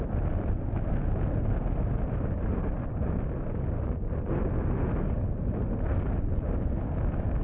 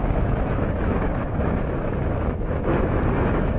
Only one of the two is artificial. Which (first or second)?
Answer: second